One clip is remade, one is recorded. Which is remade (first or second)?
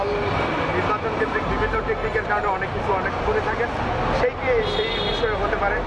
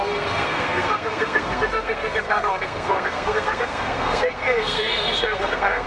second